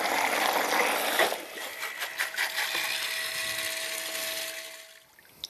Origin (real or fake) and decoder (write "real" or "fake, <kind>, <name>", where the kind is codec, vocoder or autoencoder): real